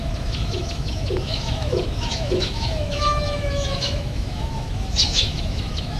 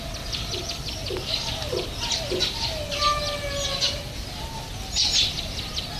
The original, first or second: second